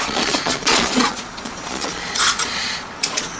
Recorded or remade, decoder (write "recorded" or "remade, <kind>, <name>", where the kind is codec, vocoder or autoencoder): remade, vocoder, Vocos